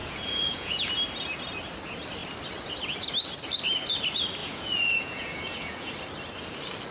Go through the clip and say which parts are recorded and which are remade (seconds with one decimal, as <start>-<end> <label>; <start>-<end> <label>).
0.0-0.9 remade; 0.9-4.4 recorded; 4.4-5.9 remade; 5.9-6.9 recorded